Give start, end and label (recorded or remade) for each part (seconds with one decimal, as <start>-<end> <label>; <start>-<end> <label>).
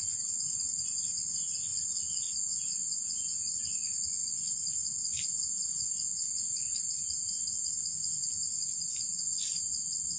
0.0-10.2 recorded